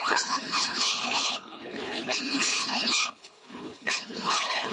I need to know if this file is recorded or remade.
remade